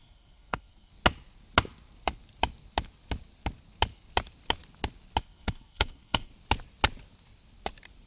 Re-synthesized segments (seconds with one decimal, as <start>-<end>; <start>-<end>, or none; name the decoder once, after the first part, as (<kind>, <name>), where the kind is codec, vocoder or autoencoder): 0.0-0.9 (codec, SNAC); 5.2-6.3